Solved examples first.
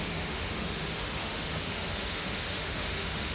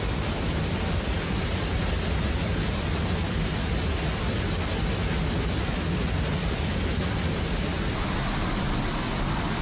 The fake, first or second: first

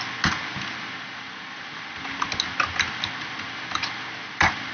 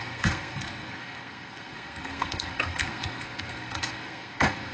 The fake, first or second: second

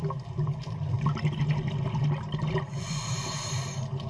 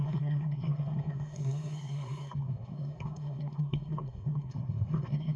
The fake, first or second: second